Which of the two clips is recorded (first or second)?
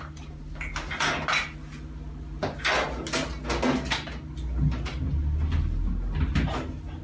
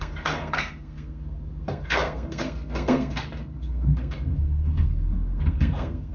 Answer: first